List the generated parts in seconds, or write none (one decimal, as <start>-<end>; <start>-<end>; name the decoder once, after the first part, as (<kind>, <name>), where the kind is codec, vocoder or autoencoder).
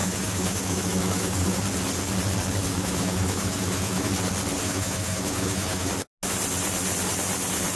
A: 0.0-1.6 (autoencoder, DAC-VAE); 2.7-4.1; 4.6-5.9